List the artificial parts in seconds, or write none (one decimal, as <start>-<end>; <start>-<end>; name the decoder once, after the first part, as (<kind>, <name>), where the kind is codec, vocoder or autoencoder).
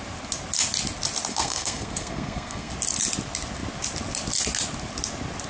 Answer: 1.3-2.7 (codec, SNAC)